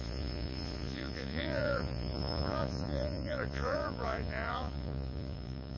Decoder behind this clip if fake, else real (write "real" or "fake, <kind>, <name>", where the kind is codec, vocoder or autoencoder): fake, vocoder, Vocos